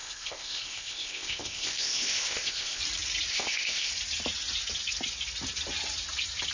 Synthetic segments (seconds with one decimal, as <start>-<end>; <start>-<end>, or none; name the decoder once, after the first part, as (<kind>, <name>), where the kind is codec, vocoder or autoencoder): 0.0-2.8 (codec, ZipCodec); 3.3-3.9